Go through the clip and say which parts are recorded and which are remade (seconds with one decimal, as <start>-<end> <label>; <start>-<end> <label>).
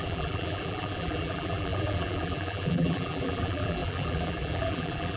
0.0-5.2 remade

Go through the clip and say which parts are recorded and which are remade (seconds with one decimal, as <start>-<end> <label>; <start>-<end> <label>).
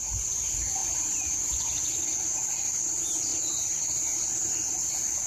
0.0-0.8 recorded; 0.8-1.4 remade; 1.4-5.3 recorded